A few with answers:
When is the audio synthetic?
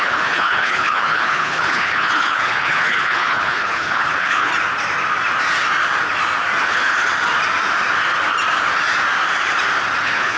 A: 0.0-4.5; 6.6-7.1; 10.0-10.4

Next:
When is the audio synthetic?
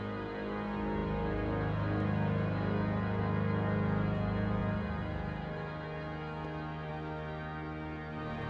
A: none